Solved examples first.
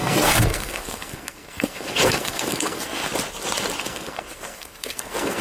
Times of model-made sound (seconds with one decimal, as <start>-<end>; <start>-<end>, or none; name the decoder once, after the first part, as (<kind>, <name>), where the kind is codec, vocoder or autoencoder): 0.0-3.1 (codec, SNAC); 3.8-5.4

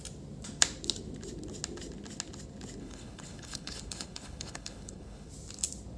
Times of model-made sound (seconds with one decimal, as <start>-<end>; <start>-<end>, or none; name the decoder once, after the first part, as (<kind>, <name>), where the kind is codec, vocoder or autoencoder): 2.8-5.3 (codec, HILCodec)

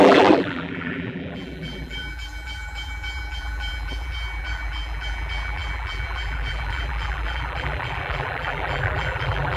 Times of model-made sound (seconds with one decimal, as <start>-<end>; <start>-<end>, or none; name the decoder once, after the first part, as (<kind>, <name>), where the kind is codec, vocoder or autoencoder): 0.0-9.6 (vocoder, BigVGAN v2)

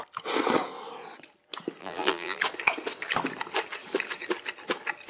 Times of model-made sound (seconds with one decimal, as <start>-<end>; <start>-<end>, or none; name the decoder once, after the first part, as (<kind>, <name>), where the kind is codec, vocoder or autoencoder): 1.8-2.4 (vocoder, BigVGAN v2)